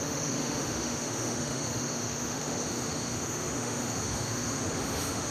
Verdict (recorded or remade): remade